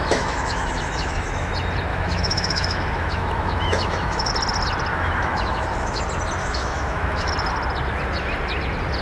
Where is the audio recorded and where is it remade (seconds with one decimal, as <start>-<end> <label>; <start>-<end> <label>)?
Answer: 0.0-1.5 remade; 1.5-1.9 recorded; 1.9-4.3 remade; 4.3-4.9 recorded; 4.9-6.0 remade; 6.0-6.4 recorded; 6.4-7.3 remade; 7.3-9.0 recorded